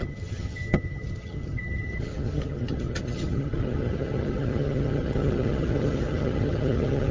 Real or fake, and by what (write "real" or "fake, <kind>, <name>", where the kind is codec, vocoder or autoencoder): fake, vocoder, HiFi-GAN